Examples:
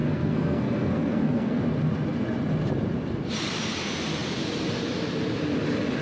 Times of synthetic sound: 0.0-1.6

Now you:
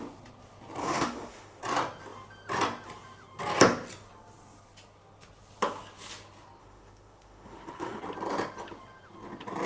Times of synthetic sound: 0.8-1.6; 6.6-8.0

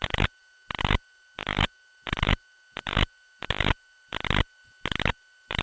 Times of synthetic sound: none

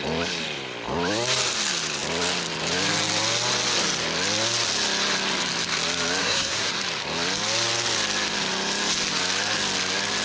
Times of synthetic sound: 6.2-6.7

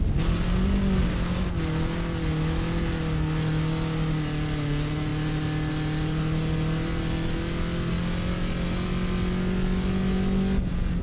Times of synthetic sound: none

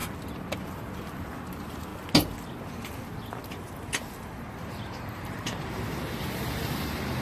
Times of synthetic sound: 1.2-1.9; 4.6-7.2